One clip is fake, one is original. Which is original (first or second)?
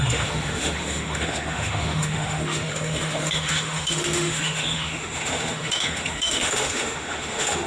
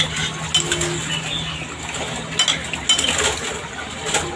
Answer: second